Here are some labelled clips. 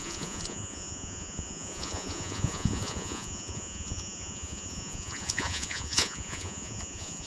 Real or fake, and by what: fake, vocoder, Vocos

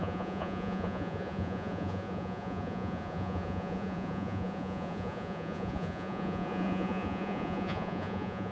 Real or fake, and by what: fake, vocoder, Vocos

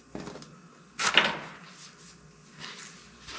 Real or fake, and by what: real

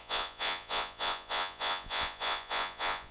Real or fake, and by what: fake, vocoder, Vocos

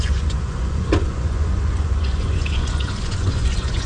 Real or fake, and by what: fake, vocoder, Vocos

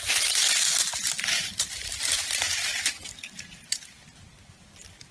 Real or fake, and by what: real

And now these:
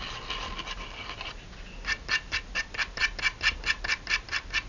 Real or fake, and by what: real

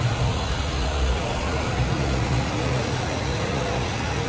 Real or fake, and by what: fake, vocoder, Vocos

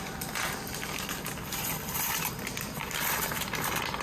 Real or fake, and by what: real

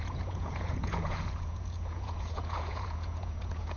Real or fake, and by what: fake, vocoder, Vocos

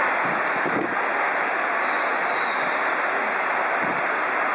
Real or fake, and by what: real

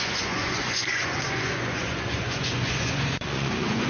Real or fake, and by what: fake, vocoder, Vocos